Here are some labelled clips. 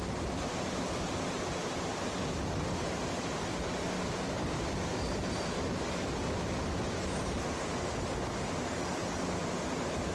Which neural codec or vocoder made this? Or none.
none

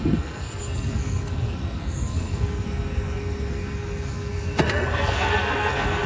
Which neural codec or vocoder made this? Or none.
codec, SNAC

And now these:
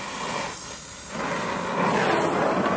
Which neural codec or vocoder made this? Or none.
none